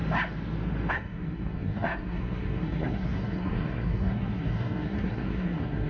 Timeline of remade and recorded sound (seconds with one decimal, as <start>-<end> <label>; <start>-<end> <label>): 0.0-0.9 recorded; 0.9-5.9 remade